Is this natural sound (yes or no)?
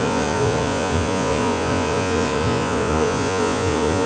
no